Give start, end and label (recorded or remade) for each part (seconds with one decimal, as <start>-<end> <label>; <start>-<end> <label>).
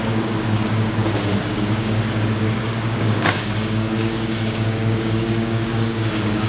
0.0-6.5 remade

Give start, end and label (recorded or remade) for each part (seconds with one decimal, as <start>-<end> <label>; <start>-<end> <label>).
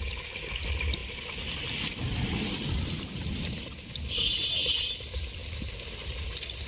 0.0-6.7 recorded